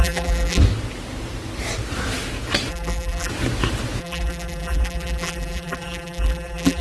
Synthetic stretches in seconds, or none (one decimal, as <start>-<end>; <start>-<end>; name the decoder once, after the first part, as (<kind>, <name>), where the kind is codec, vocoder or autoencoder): 0.0-0.6 (vocoder, BigVGAN v2); 2.7-3.3; 4.0-6.8